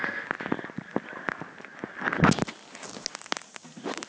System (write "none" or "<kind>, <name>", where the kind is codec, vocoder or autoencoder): none